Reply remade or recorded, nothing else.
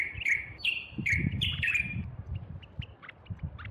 remade